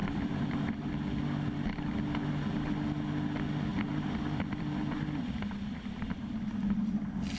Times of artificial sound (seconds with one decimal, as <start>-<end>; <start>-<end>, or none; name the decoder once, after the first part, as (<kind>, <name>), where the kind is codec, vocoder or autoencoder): 0.0-0.9 (vocoder, BigVGAN v2); 3.7-6.3